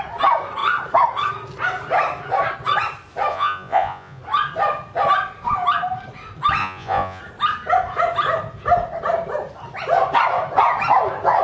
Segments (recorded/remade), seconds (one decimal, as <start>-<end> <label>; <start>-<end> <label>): 0.0-3.3 recorded; 3.3-4.2 remade; 4.2-6.6 recorded; 6.6-7.2 remade; 7.2-11.4 recorded